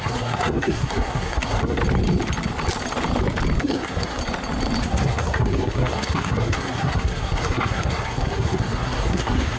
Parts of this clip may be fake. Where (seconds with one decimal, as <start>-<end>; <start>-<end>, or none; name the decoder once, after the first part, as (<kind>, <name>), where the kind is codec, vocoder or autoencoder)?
0.0-1.8 (codec, SNAC); 3.6-4.2; 4.8-9.6